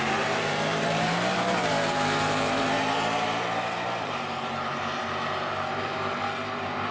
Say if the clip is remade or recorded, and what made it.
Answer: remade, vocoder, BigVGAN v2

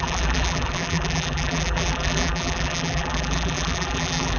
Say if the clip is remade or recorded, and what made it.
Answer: remade, vocoder, BigVGAN v2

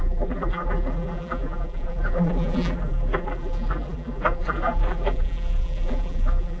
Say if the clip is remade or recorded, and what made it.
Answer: remade, vocoder, BigVGAN v2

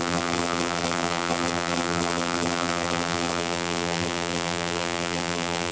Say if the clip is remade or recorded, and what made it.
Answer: remade, vocoder, BigVGAN v2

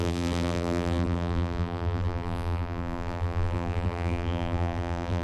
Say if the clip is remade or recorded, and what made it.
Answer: remade, vocoder, BigVGAN v2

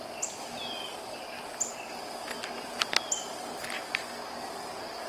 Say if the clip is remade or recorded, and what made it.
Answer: recorded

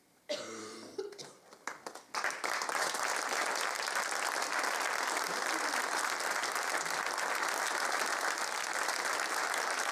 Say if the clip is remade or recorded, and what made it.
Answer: remade, vocoder, BigVGAN v2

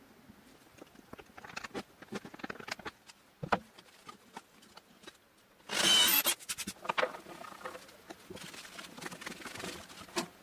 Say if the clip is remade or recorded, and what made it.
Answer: recorded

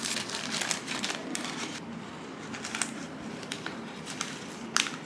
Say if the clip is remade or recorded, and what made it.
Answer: remade, vocoder, BigVGAN v2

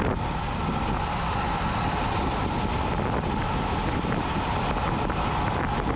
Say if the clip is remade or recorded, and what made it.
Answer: recorded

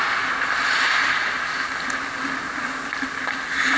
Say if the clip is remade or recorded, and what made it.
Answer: recorded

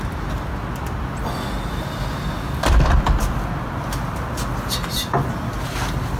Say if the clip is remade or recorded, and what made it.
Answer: recorded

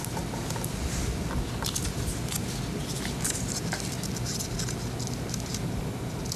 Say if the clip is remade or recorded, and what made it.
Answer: recorded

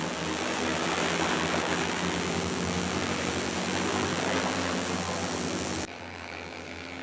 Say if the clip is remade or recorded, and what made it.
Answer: remade, vocoder, BigVGAN v2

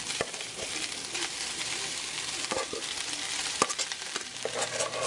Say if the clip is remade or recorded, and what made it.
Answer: remade, vocoder, BigVGAN v2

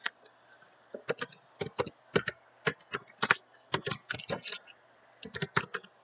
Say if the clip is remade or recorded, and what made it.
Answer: recorded